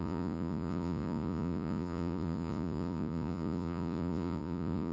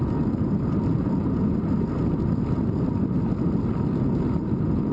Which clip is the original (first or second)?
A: second